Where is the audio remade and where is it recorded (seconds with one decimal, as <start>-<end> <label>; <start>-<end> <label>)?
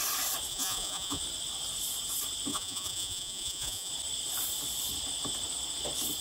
0.0-0.5 recorded; 0.5-1.2 remade; 1.2-2.5 recorded; 2.5-3.9 remade; 3.9-6.2 recorded